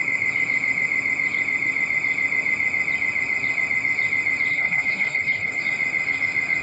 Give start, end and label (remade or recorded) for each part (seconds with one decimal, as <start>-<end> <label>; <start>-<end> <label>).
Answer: 0.0-4.5 recorded; 4.5-5.6 remade; 5.6-6.6 recorded